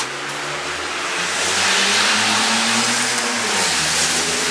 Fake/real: real